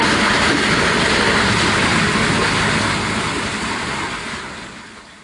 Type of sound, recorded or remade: recorded